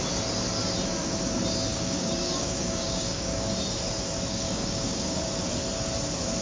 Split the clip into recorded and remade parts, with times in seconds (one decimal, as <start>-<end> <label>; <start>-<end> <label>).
0.0-1.7 recorded; 1.7-3.5 remade; 3.5-4.3 recorded; 4.3-5.2 remade; 5.2-6.4 recorded